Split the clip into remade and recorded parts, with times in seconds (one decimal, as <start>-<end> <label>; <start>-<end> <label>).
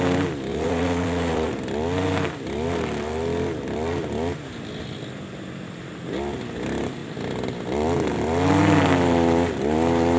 0.0-0.5 recorded; 0.5-1.5 remade; 1.5-10.2 recorded